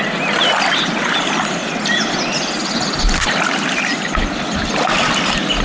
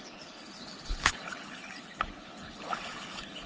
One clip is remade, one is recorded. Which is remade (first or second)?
second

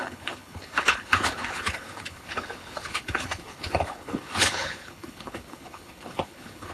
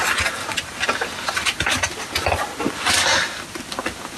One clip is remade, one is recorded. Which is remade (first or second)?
first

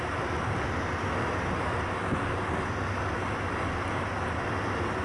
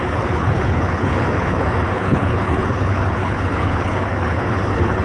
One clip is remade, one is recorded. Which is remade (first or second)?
second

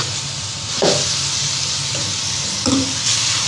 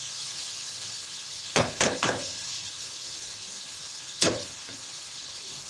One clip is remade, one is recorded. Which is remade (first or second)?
second